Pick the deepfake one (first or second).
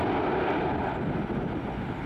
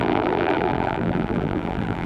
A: second